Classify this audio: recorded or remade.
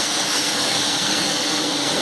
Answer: remade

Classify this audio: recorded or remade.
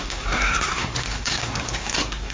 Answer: remade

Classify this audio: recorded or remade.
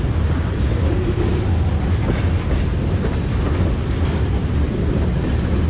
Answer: recorded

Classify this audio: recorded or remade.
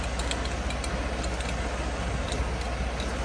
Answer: recorded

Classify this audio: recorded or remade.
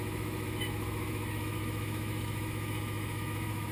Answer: remade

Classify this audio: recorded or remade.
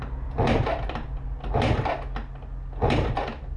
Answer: recorded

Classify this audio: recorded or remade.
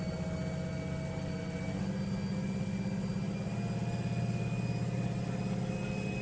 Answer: recorded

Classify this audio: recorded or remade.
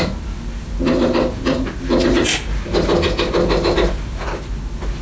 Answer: recorded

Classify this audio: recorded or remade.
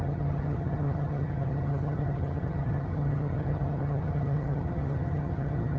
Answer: remade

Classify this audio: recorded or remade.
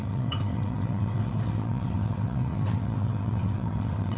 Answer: remade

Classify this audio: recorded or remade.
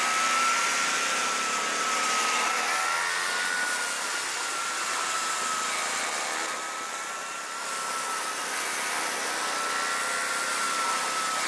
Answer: recorded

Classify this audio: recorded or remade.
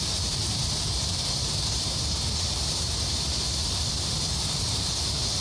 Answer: remade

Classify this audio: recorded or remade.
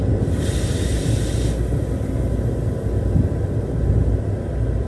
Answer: recorded